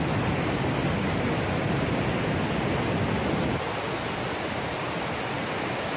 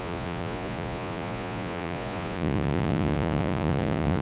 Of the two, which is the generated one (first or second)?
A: second